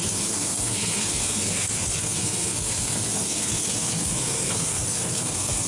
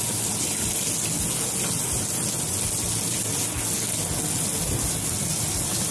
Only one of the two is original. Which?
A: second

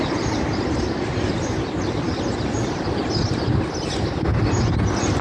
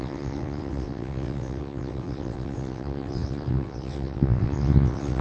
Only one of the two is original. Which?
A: first